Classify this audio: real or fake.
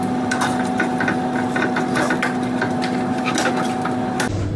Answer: real